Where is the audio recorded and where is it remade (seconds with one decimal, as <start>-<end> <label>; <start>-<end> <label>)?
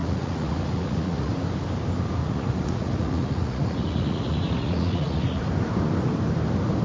0.0-1.3 remade; 1.3-2.2 recorded; 2.2-5.4 remade; 5.4-6.8 recorded